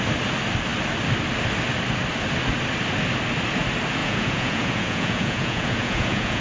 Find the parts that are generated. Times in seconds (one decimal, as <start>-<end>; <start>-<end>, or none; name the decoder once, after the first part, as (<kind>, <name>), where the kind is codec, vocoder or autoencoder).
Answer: 4.0-6.4 (vocoder, Vocos)